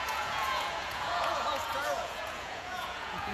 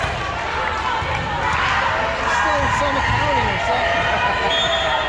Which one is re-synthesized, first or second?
first